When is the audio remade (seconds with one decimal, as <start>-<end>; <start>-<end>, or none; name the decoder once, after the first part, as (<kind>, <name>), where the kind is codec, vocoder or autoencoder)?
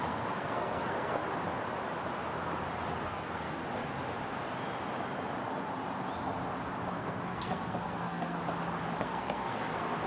0.0-1.2 (codec, SNAC); 3.0-3.6; 6.9-8.4; 9.0-10.1